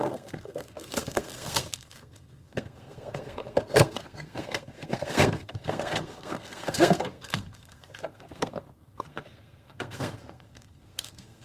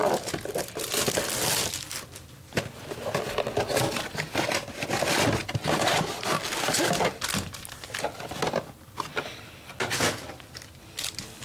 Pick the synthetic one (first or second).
first